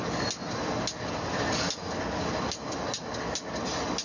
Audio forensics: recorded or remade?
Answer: recorded